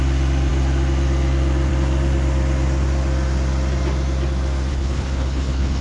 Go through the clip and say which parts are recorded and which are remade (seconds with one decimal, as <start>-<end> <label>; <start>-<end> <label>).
0.0-4.7 recorded; 4.7-5.8 remade